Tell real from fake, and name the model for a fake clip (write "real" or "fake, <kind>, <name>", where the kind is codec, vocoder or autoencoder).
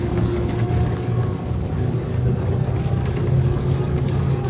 fake, codec, DAC